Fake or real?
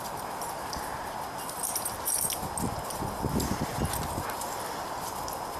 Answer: real